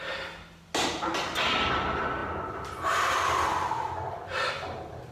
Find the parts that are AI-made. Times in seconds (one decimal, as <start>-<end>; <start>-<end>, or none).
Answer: none